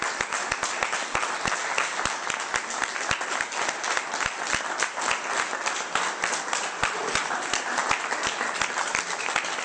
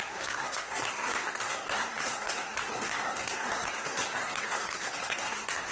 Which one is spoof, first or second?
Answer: second